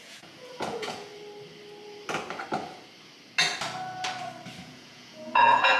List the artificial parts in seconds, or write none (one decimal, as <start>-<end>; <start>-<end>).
0.0-1.1; 4.6-5.8